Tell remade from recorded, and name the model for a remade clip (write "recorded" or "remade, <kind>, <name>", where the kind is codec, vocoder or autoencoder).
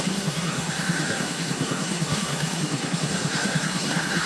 remade, codec, SNAC